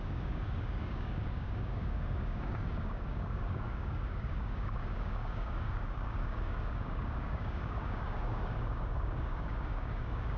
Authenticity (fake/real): fake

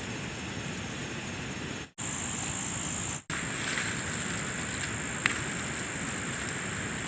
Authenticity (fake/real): real